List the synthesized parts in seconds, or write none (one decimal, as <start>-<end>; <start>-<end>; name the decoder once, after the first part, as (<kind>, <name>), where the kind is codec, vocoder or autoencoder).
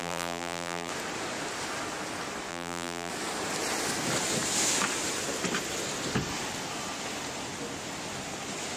0.0-0.9 (vocoder, BigVGAN v2); 2.5-3.1